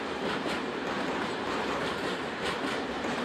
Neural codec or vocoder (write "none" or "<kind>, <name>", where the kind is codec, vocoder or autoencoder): vocoder, BigVGAN v2